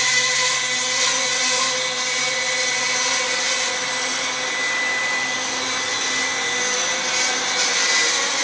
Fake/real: real